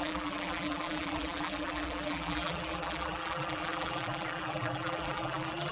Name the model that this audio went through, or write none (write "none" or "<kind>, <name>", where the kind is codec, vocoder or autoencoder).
vocoder, BigVGAN v2